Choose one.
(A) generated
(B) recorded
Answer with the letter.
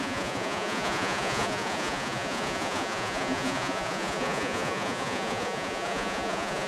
A